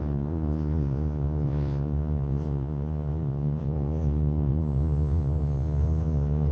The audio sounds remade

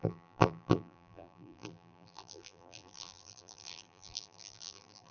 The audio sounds remade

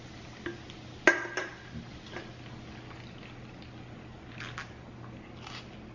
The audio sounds recorded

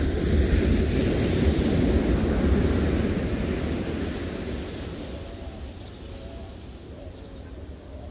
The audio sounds recorded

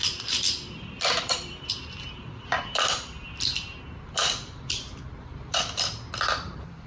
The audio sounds remade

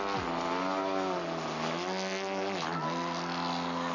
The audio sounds recorded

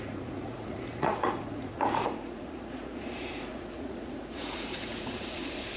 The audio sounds remade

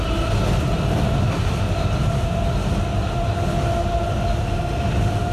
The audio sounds recorded